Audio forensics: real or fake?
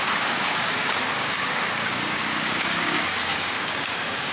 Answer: fake